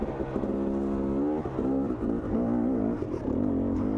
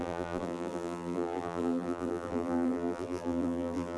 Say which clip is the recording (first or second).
first